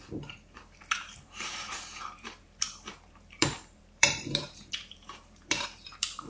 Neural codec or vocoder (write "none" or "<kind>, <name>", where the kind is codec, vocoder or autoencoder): vocoder, BigVGAN v2